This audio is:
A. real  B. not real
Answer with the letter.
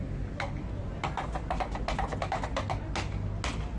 A